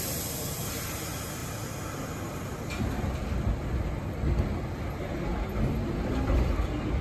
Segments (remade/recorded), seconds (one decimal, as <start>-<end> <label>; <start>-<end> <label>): 0.0-7.0 recorded